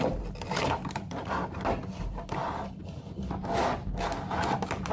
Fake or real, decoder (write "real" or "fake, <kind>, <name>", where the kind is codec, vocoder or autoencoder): real